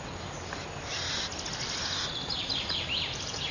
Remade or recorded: recorded